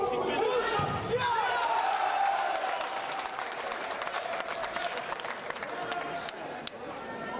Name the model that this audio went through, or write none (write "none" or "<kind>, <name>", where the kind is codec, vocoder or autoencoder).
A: vocoder, BigVGAN v2